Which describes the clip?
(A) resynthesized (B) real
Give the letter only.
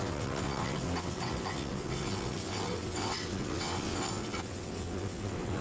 A